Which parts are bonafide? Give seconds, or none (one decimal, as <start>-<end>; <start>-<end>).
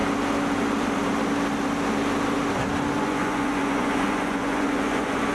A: 0.0-3.0